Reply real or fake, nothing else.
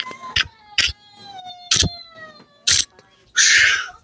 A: real